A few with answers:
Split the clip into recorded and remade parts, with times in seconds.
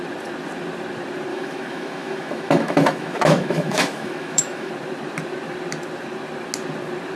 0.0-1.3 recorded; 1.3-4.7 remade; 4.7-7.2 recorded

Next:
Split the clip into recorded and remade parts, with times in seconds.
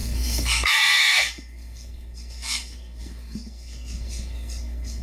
0.0-5.0 remade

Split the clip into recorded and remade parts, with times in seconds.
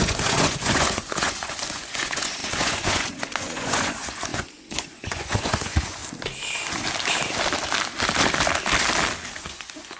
0.0-6.0 remade; 6.0-9.4 recorded; 9.4-10.0 remade